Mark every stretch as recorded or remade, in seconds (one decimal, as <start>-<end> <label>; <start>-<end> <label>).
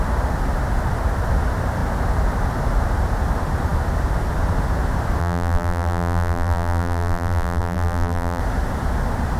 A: 0.0-5.2 recorded; 5.2-8.4 remade; 8.4-9.4 recorded